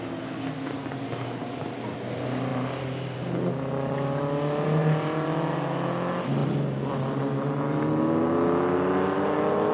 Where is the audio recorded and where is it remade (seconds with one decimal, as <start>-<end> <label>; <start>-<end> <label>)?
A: 0.0-9.7 recorded